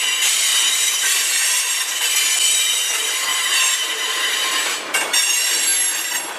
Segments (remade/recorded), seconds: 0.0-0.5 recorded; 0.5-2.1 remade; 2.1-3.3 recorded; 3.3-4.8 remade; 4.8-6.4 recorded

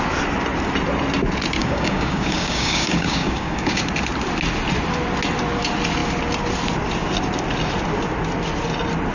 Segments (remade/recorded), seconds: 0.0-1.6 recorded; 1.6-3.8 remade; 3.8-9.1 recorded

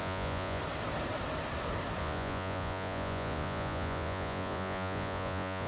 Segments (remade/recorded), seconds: 0.0-0.6 remade; 0.6-2.0 recorded; 2.0-5.7 remade

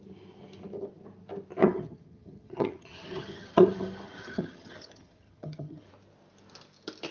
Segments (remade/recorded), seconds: 0.0-1.6 recorded; 1.6-5.9 remade; 5.9-7.1 recorded

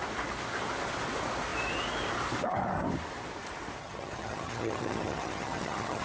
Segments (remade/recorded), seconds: 0.0-3.8 recorded; 3.8-6.0 remade